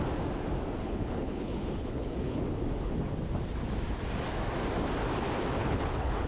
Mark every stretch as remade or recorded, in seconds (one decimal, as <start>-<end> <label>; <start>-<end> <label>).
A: 0.0-0.8 recorded; 0.8-2.4 remade; 2.4-5.6 recorded; 5.6-6.3 remade